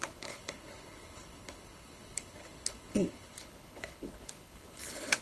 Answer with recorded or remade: remade